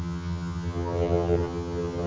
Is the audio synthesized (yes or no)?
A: yes